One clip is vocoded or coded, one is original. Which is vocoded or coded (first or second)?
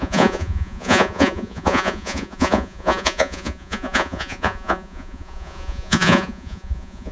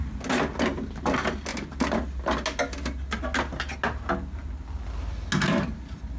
first